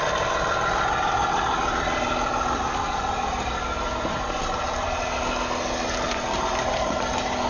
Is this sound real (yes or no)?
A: yes